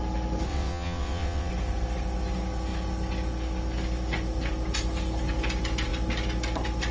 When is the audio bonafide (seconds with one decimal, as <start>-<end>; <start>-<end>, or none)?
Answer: 0.0-0.5; 1.5-6.9